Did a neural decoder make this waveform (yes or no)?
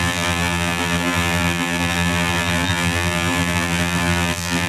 yes